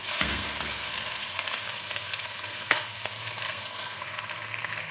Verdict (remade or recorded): remade